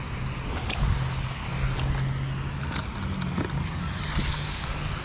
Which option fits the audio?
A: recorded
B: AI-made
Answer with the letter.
A